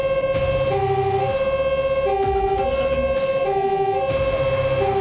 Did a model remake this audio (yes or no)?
no